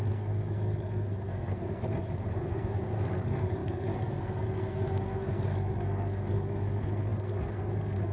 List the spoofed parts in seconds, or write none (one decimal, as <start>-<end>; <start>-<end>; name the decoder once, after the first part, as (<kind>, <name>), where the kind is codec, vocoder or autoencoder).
0.0-8.1 (codec, SNAC)